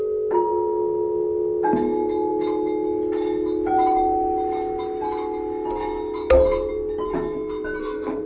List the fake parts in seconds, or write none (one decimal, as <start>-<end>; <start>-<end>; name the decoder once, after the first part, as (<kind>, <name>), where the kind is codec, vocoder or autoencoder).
7.8-8.3 (codec, SNAC)